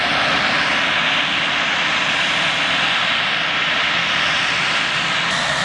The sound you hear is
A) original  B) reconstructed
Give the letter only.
A